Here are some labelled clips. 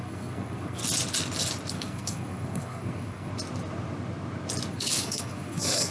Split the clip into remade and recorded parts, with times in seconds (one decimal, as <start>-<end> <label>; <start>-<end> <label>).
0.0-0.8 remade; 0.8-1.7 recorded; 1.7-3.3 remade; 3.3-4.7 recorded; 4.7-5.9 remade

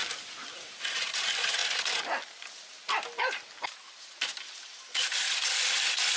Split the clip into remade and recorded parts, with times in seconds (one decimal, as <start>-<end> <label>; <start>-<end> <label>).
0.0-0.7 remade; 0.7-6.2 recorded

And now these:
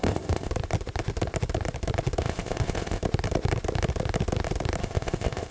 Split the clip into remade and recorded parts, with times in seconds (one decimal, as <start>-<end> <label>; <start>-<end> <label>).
0.0-0.5 remade; 0.5-2.2 recorded; 2.2-3.0 remade; 3.0-4.8 recorded; 4.8-5.5 remade

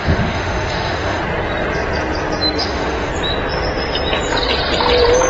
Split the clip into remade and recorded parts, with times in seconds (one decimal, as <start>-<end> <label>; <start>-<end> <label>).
0.0-1.2 remade; 1.2-2.6 recorded; 2.6-3.1 remade; 3.1-5.3 recorded

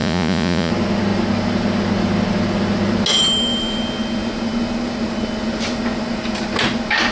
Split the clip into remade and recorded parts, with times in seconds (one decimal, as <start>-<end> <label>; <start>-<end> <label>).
0.0-0.7 remade; 0.7-7.1 recorded

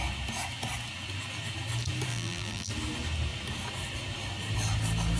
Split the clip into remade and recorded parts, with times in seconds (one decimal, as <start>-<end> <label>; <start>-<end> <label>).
0.0-2.1 recorded; 2.1-2.7 remade; 2.7-5.2 recorded

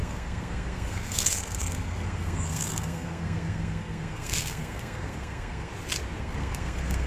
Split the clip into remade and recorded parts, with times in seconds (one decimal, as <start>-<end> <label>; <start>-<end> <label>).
0.0-5.7 remade; 5.7-6.2 recorded; 6.2-7.1 remade

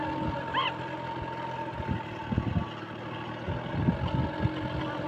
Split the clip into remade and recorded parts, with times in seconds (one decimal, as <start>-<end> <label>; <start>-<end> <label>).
0.0-5.1 recorded